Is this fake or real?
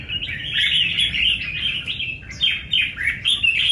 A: real